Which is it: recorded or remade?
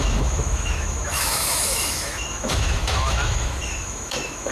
remade